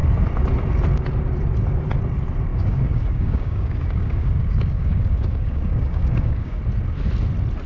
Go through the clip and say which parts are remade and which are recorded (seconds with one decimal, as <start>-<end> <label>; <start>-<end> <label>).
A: 0.0-2.5 recorded; 2.5-6.6 remade; 6.6-7.7 recorded